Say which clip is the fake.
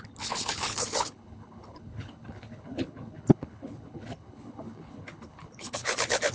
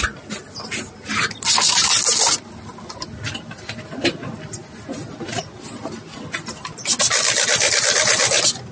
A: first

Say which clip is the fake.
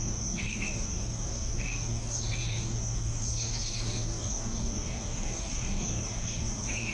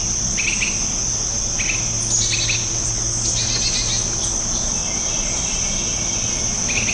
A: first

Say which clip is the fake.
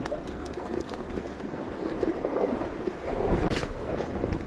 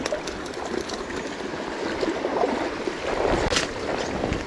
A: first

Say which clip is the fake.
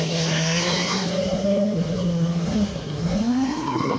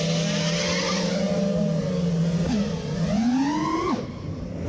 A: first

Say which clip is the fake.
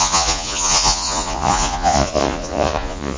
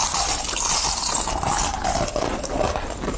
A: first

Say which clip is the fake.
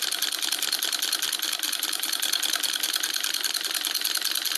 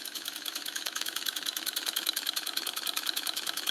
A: second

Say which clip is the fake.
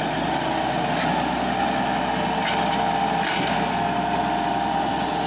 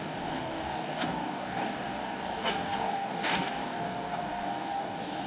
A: second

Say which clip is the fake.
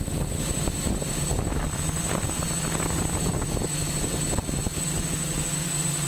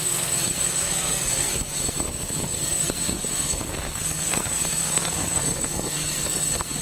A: second